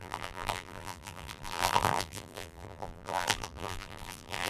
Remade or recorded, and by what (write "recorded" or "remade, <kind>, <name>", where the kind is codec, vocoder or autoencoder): remade, vocoder, BigVGAN v2